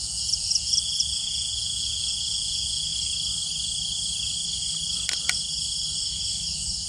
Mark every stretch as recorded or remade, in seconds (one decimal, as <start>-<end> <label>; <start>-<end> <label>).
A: 0.0-2.9 remade; 2.9-6.9 recorded